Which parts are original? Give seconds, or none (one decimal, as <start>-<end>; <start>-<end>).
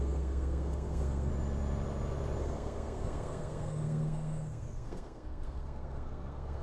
1.3-2.4